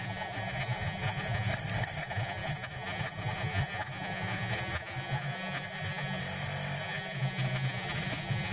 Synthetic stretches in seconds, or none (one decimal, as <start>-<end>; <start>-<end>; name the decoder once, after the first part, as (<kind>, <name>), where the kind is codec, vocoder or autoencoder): 0.0-1.5 (vocoder, Vocos); 2.0-6.2; 6.8-8.5